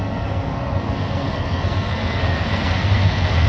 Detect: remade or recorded remade